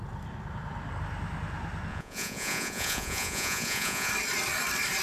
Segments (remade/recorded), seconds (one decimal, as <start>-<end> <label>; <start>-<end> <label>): 0.0-1.9 recorded; 1.9-4.1 remade; 4.1-5.0 recorded